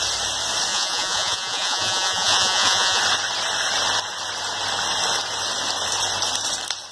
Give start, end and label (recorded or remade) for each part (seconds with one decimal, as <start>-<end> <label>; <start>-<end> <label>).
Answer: 0.0-0.7 recorded; 0.7-3.0 remade; 3.0-6.9 recorded